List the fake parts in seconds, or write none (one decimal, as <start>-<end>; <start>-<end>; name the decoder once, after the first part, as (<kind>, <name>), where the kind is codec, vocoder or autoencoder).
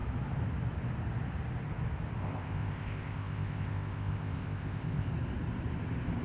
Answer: 2.2-5.1 (codec, ZipCodec)